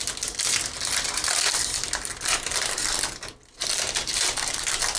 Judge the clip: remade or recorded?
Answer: recorded